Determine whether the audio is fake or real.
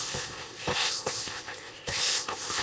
fake